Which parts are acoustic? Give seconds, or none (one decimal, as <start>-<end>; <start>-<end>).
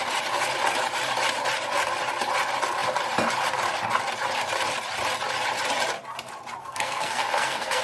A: 0.0-6.6